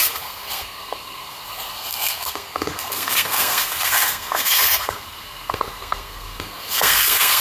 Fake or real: fake